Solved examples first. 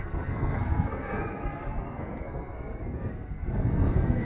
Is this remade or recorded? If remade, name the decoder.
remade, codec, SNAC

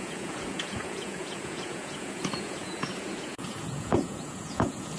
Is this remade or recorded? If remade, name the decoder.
remade, vocoder, Vocos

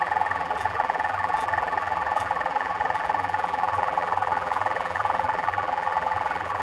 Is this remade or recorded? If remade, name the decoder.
remade, vocoder, BigVGAN v2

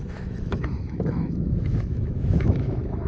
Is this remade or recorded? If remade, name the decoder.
remade, autoencoder, DAC-VAE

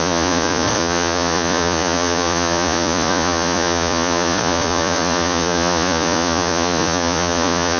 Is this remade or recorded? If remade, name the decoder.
remade, vocoder, Vocos